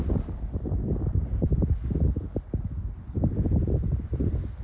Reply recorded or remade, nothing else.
recorded